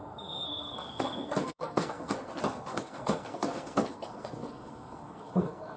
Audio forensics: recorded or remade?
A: remade